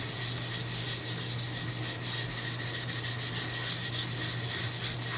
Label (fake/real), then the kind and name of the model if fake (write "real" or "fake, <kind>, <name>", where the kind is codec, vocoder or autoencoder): real